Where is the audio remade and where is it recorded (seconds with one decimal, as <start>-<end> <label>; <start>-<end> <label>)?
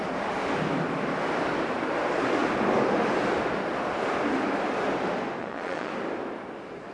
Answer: 0.0-5.4 recorded; 5.4-5.9 remade; 5.9-6.9 recorded